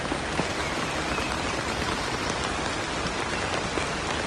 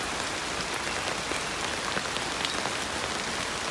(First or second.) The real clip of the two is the second